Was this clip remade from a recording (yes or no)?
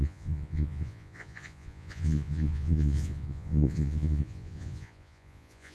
yes